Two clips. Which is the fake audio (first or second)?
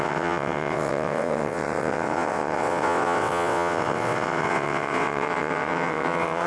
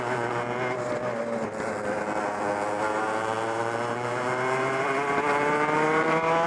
first